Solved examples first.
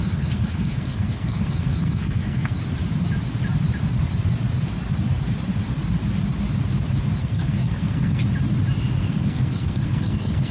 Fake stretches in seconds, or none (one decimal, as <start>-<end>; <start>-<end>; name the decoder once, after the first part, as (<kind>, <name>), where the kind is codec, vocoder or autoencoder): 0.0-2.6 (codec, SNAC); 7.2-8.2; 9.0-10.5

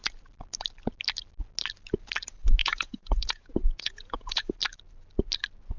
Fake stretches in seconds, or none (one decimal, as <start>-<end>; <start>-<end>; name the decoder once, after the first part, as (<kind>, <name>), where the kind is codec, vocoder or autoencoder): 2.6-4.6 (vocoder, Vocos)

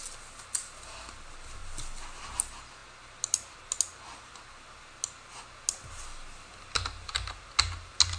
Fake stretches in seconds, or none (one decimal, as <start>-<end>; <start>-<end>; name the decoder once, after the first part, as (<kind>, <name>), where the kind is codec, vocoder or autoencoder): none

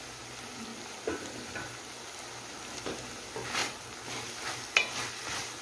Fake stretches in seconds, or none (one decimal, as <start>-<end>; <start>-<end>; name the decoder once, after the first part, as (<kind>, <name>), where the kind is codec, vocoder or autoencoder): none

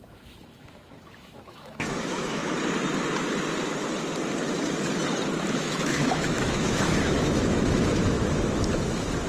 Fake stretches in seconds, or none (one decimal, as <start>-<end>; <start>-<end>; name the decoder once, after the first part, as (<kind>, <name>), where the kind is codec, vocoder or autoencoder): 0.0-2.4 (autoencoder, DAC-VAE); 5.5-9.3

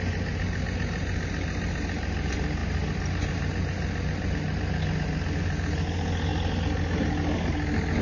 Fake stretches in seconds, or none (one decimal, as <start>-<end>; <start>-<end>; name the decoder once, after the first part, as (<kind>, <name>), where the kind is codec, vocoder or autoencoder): none